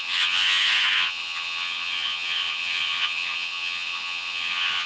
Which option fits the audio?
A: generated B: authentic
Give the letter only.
A